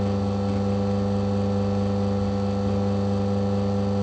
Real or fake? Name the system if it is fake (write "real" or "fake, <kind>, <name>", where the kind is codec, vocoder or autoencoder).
real